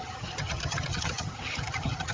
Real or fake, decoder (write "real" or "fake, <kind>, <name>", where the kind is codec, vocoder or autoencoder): fake, vocoder, HiFi-GAN